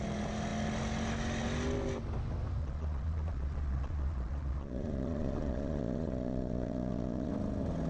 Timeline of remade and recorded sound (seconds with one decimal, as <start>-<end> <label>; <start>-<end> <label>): 0.0-2.6 recorded; 2.6-7.3 remade; 7.3-7.9 recorded

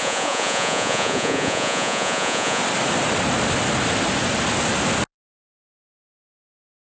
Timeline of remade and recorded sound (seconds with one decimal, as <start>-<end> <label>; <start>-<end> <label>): 0.0-2.6 remade; 2.6-6.8 recorded